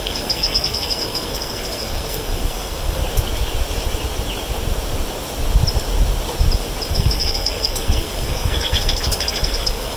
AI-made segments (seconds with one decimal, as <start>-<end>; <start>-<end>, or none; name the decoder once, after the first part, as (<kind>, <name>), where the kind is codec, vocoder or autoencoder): 0.0-3.0 (codec, SNAC); 6.9-10.0